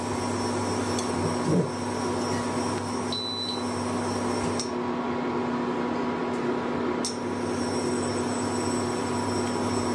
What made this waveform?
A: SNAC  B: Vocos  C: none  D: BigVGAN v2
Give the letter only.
C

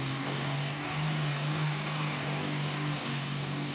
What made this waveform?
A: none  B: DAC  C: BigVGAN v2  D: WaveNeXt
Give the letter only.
B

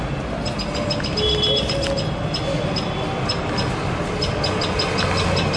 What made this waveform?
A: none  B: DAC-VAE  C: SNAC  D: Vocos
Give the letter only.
A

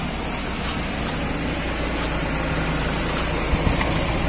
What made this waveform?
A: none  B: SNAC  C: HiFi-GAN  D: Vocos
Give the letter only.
A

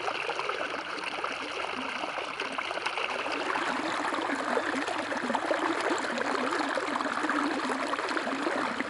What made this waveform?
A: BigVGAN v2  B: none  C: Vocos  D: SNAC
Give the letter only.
B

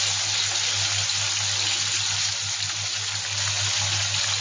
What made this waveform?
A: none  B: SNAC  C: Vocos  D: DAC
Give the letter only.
A